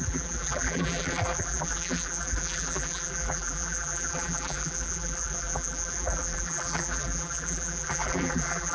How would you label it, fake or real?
fake